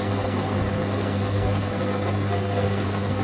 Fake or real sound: fake